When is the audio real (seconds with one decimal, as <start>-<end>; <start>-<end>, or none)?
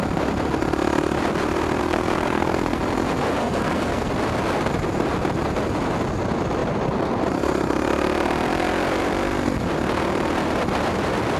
0.0-1.8; 2.8-3.4; 4.1-11.4